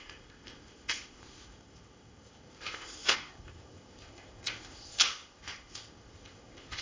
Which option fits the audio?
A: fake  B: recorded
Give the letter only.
A